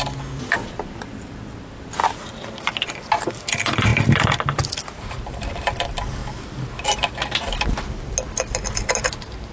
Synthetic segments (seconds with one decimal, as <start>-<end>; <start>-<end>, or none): none